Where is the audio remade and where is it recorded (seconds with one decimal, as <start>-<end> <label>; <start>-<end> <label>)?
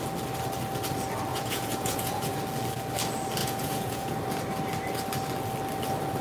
0.0-1.3 recorded; 1.3-2.4 remade; 2.4-3.4 recorded; 3.4-4.1 remade; 4.1-6.2 recorded